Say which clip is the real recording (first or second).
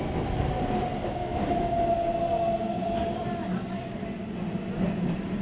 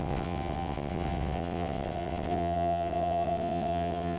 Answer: first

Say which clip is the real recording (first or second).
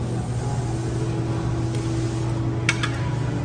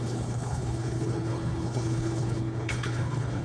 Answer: first